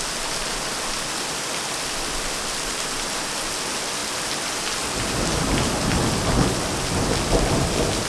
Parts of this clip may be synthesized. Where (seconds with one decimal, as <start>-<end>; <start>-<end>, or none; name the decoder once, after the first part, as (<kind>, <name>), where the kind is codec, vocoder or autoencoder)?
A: none